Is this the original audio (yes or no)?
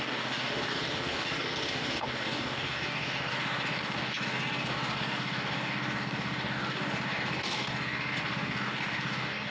no